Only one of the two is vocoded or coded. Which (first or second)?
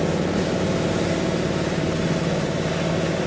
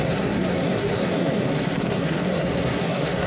second